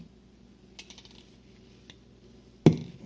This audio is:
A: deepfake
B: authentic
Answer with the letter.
B